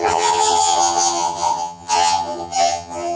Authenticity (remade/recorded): remade